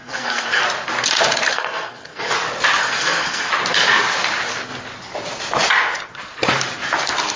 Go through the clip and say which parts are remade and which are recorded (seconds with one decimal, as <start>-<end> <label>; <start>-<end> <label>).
0.0-0.6 remade; 0.6-1.5 recorded; 1.5-2.3 remade; 2.3-2.8 recorded; 2.8-3.5 remade; 3.5-7.4 recorded